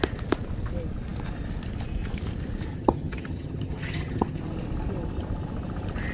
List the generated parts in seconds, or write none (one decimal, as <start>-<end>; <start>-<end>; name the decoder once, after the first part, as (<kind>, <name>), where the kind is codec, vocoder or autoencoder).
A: 2.7-4.4 (vocoder, HiFi-GAN)